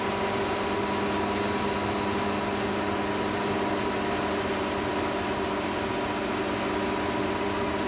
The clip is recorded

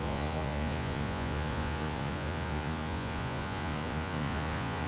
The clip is remade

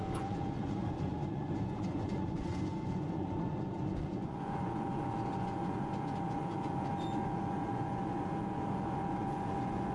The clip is remade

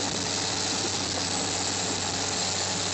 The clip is recorded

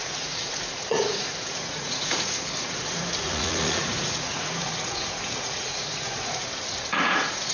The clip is remade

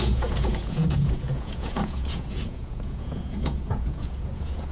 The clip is remade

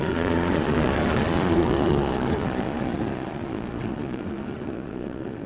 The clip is remade